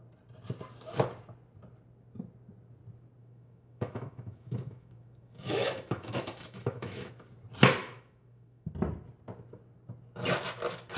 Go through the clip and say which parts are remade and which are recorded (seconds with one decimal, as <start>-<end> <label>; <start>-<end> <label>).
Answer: 0.0-3.2 recorded; 3.2-7.1 remade; 7.1-7.8 recorded; 7.8-8.7 remade; 8.7-11.0 recorded